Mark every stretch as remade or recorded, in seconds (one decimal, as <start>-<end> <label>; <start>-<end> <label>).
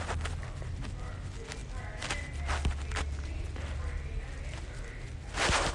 0.0-5.7 recorded